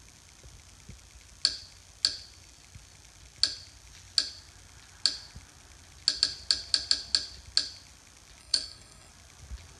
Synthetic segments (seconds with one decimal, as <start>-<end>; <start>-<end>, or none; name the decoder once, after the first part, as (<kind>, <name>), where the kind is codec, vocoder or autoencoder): 8.4-9.1 (codec, SNAC)